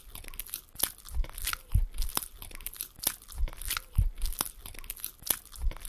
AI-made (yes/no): no